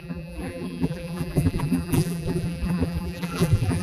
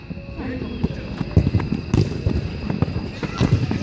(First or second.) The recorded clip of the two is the second